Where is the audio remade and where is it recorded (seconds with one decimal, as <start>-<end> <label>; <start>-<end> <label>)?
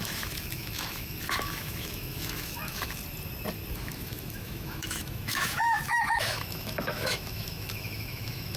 0.0-3.0 remade; 3.0-3.7 recorded; 3.7-8.6 remade